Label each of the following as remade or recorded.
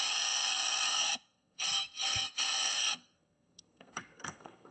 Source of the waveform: remade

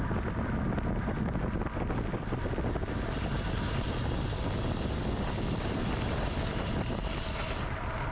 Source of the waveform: recorded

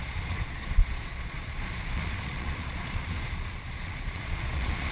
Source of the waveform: remade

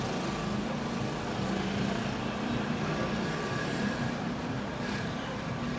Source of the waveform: recorded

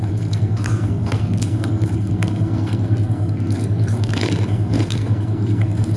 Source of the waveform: remade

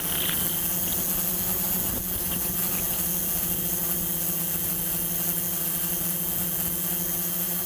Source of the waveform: recorded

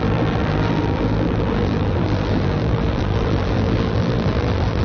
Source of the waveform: remade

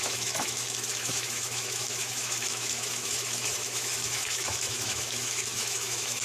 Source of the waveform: remade